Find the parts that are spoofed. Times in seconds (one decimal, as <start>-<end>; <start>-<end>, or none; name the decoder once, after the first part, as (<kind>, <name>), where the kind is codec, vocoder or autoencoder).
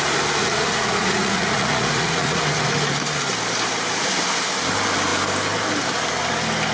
0.4-2.4 (vocoder, Vocos)